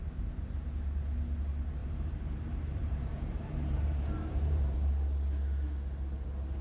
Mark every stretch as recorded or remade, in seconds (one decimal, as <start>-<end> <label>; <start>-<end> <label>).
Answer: 0.0-1.8 recorded; 1.8-4.9 remade; 4.9-6.6 recorded